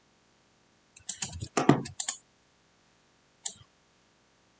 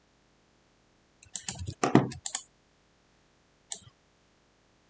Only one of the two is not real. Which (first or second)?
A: first